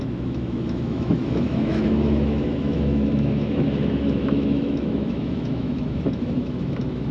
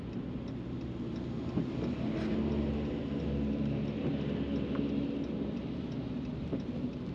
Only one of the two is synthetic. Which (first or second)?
first